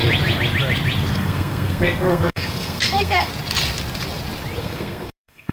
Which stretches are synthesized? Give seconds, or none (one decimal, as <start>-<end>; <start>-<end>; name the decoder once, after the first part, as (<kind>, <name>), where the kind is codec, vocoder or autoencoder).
1.1-3.3 (codec, SNAC); 4.6-5.5